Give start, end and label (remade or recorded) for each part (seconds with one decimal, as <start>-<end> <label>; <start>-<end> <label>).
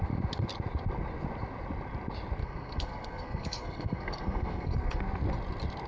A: 0.0-2.4 recorded; 2.4-5.0 remade; 5.0-5.9 recorded